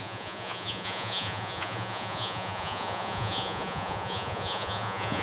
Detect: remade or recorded remade